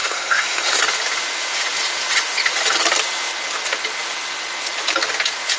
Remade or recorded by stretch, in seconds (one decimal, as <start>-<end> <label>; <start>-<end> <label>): 0.0-0.8 remade; 0.8-5.6 recorded